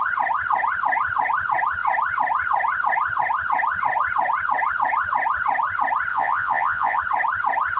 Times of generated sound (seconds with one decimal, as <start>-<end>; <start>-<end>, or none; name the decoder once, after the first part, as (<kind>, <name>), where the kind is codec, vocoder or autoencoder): 6.1-7.0 (vocoder, Vocos)